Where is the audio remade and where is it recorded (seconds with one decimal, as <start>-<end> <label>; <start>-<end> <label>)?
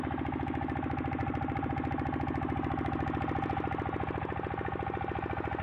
0.0-1.2 recorded; 1.2-1.7 remade; 1.7-5.6 recorded